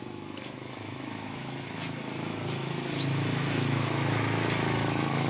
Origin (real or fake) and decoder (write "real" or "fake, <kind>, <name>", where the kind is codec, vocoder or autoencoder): fake, autoencoder, DAC-VAE